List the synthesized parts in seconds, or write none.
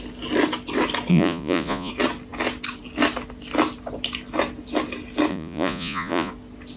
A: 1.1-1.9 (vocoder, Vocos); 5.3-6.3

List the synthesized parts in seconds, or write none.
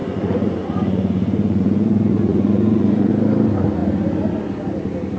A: 0.0-3.1 (vocoder, Vocos)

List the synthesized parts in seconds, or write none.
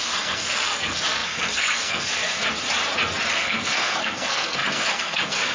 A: 0.0-2.4 (codec, SNAC); 3.3-5.5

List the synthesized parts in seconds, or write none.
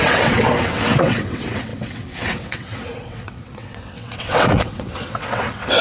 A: 0.0-5.8 (vocoder, WaveNeXt)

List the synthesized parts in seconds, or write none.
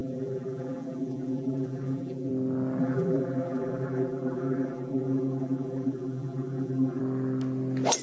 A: 0.0-2.3 (vocoder, BigVGAN v2); 2.8-7.0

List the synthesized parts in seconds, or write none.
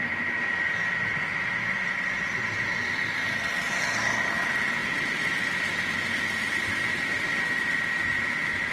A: 6.8-7.4 (vocoder, BigVGAN v2)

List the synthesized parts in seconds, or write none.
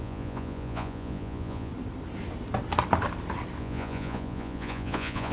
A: 0.0-1.7 (vocoder, Vocos); 3.6-5.3